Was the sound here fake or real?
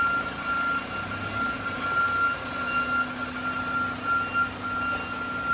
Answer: real